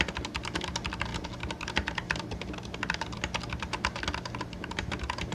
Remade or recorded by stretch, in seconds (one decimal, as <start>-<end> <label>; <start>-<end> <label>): 0.0-5.3 recorded